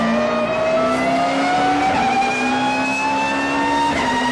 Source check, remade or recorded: recorded